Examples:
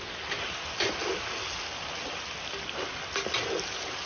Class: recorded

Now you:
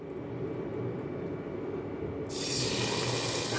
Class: recorded